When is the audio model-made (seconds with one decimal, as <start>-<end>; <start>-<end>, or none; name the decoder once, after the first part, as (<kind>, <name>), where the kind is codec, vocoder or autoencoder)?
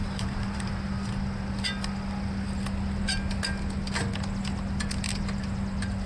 0.0-0.7 (vocoder, BigVGAN v2)